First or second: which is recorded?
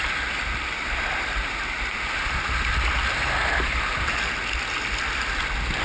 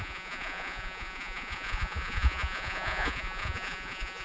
first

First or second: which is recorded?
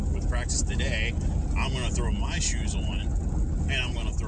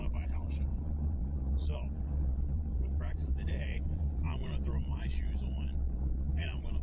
first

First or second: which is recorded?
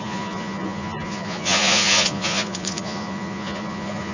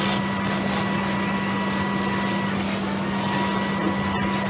second